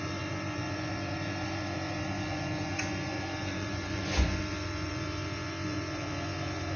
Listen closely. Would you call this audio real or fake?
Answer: fake